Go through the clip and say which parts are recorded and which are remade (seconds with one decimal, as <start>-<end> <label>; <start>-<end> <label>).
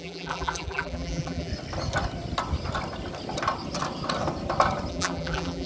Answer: 0.0-1.5 remade; 1.5-4.9 recorded; 4.9-5.7 remade